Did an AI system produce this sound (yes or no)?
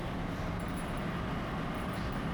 no